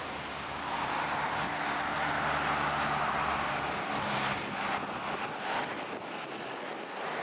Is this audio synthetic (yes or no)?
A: no